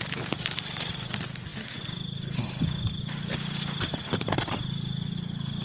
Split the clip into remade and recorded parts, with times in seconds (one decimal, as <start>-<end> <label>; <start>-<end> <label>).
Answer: 0.0-5.6 recorded